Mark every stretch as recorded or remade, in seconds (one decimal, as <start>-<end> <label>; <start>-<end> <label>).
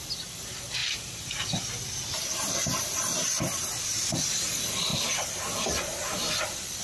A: 0.0-0.8 recorded; 0.8-1.5 remade; 1.5-4.9 recorded; 4.9-6.8 remade